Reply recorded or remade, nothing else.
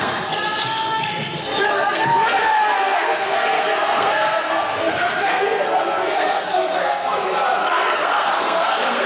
remade